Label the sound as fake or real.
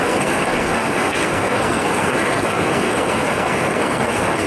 fake